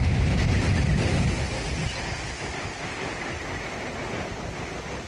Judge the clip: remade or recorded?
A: recorded